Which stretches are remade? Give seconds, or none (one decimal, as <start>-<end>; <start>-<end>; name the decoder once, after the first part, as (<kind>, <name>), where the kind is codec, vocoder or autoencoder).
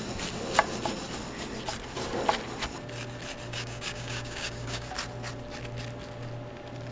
3.5-4.9 (codec, DAC)